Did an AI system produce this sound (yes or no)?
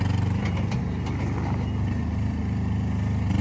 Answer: no